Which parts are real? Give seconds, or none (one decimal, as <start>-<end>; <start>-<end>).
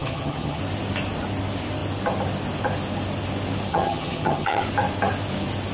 0.6-3.7; 4.6-5.7